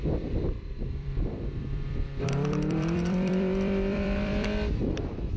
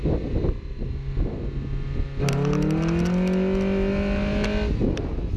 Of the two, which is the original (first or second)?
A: second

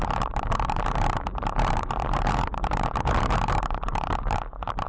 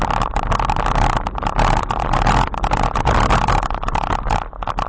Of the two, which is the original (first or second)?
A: second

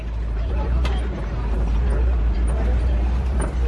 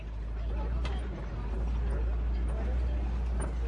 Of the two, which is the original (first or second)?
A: second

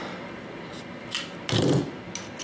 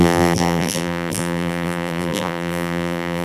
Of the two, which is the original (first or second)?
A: first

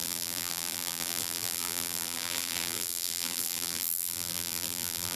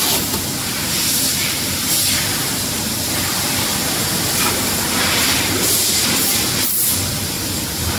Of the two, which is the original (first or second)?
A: second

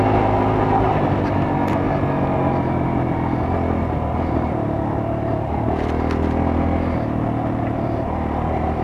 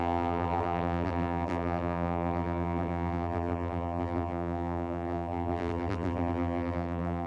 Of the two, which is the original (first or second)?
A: first